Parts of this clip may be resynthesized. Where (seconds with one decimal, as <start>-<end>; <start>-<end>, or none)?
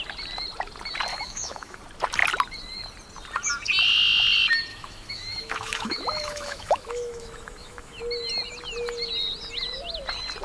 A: 1.1-1.8; 4.7-8.0